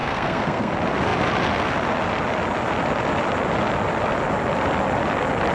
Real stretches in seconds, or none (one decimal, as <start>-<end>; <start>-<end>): 0.7-5.5